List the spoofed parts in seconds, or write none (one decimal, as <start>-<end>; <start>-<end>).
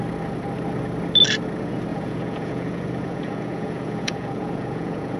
1.9-5.2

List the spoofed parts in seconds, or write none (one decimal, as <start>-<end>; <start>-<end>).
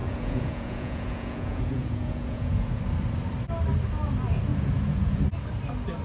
0.0-2.8; 4.5-5.2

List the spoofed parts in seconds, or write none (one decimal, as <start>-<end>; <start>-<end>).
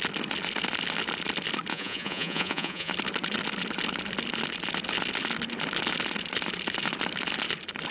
1.7-2.9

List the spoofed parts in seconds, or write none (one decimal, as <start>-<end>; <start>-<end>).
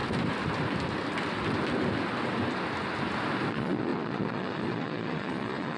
3.5-5.8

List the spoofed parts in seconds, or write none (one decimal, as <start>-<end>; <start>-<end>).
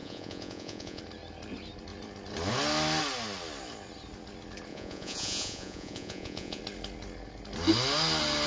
0.0-1.0; 4.7-6.6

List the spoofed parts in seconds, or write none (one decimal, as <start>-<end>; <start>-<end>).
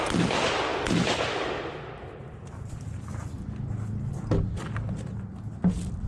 none